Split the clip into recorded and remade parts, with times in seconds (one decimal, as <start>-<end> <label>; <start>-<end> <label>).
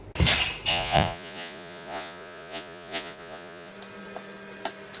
0.0-0.7 recorded; 0.7-3.7 remade; 3.7-5.0 recorded